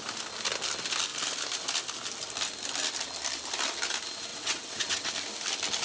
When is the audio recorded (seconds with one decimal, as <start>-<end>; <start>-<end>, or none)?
0.0-4.3; 5.1-5.8